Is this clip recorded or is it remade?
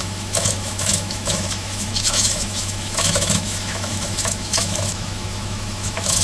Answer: remade